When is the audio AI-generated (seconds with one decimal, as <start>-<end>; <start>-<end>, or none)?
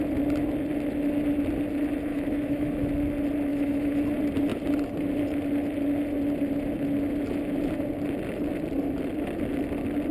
2.1-2.9; 3.5-4.0